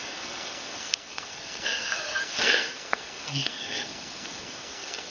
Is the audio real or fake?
fake